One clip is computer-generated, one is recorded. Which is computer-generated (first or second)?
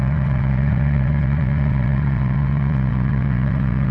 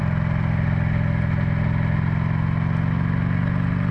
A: first